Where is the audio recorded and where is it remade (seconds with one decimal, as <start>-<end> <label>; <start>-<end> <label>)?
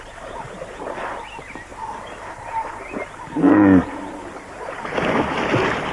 0.0-5.9 recorded